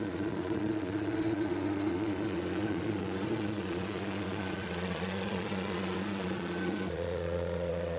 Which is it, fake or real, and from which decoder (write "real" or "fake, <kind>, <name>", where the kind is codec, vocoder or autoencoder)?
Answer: fake, vocoder, Vocos